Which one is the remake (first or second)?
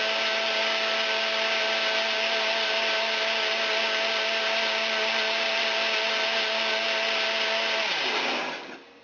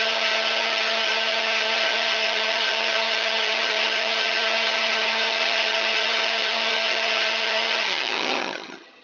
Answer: second